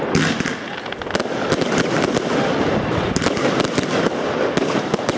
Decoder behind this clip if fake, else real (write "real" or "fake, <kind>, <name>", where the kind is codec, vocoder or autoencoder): real